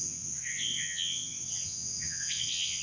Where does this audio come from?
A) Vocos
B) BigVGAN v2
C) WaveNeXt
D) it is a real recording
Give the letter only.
C